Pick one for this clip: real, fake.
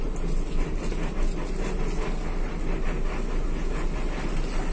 real